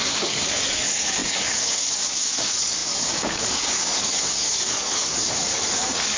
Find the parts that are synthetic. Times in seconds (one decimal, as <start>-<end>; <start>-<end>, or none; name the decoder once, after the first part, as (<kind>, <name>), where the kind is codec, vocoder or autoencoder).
0.0-6.2 (codec, DAC)